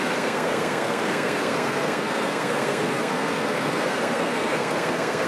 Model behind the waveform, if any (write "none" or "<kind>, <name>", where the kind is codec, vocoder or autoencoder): codec, SNAC